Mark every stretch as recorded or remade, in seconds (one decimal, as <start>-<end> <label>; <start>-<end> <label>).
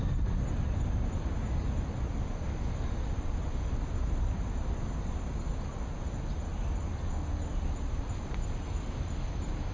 0.0-9.7 recorded